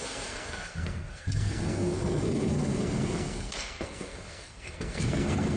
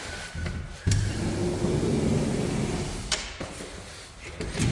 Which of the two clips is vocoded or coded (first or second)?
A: first